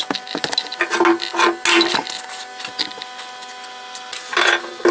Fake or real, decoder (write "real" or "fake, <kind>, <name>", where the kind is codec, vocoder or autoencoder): real